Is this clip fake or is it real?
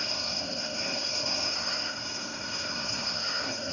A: fake